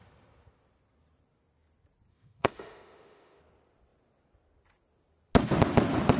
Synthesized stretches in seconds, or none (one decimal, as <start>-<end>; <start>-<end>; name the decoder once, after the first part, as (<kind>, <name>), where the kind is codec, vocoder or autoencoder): 2.1-3.4 (autoencoder, DAC-VAE)